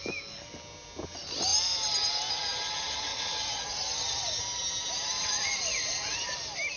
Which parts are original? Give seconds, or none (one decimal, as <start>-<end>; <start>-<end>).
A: 0.0-3.1; 4.4-5.2; 6.2-6.8